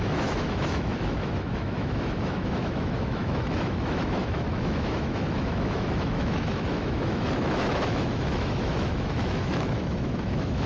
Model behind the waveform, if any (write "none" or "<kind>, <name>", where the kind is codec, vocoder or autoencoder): autoencoder, DAC-VAE